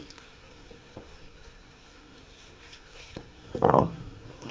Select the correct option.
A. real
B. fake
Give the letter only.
B